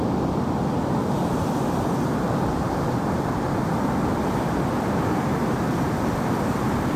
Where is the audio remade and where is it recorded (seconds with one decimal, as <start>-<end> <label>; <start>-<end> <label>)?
0.0-1.2 recorded; 1.2-5.4 remade; 5.4-7.0 recorded